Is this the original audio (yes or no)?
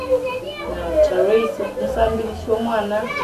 yes